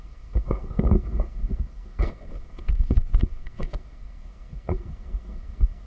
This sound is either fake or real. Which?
fake